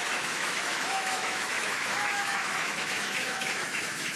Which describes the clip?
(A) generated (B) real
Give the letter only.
A